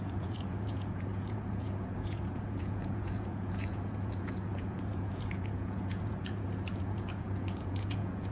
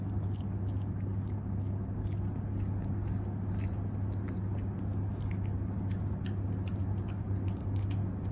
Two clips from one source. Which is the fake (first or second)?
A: first